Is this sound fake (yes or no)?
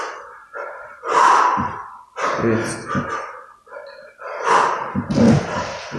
no